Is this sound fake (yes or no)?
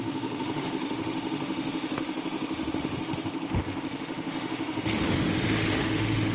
yes